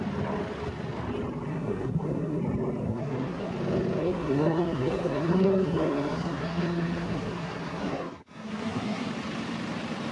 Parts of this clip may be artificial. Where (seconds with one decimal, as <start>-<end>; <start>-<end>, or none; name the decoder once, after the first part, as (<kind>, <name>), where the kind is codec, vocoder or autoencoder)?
1.5-2.4 (codec, SNAC); 2.8-3.5; 4.0-9.1